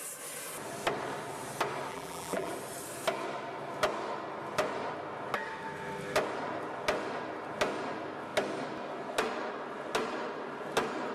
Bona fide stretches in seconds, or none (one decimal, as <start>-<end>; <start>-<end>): 0.0-1.9; 2.5-11.1